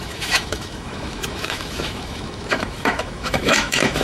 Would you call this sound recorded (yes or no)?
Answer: no